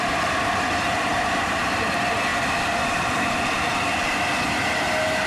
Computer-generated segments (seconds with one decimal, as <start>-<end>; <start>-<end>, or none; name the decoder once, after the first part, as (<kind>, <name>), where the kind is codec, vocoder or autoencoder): 0.0-1.1 (vocoder, BigVGAN v2); 1.6-5.3